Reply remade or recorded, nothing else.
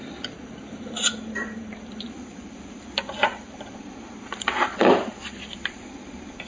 remade